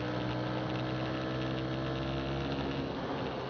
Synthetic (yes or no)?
no